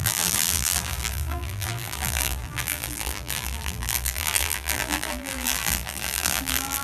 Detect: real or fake fake